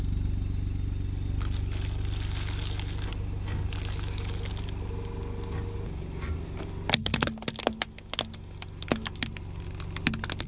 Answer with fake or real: real